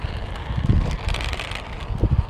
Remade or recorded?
recorded